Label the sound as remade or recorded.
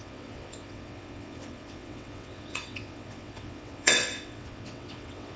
remade